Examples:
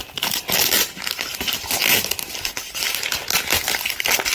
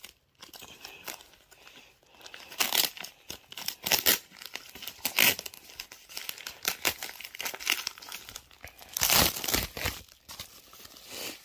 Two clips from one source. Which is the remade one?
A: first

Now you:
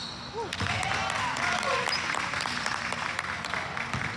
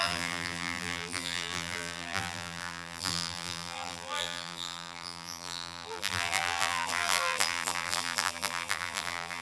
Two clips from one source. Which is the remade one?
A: second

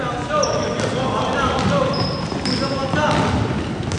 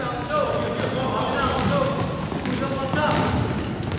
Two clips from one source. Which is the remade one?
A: first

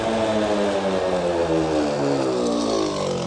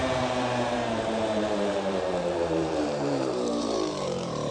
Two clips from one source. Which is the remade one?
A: second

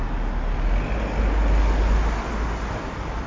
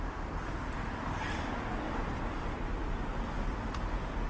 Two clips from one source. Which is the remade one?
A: second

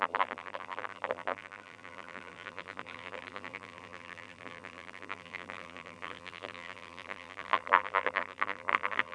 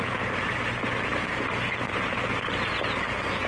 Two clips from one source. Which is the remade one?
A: first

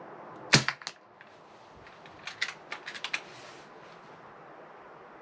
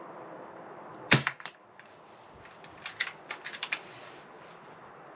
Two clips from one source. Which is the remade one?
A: second